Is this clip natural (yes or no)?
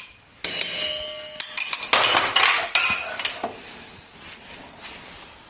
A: yes